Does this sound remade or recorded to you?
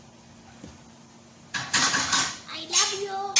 recorded